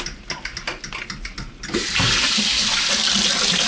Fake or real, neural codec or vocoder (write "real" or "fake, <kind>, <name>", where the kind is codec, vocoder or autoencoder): real